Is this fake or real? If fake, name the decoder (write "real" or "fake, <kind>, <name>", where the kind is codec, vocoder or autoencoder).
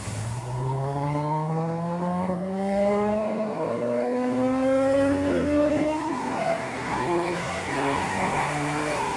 fake, codec, SNAC